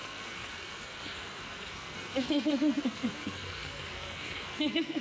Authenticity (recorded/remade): remade